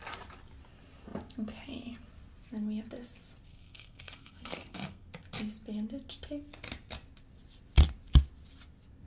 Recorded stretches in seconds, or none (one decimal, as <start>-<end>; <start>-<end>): 0.0-3.5; 5.1-9.1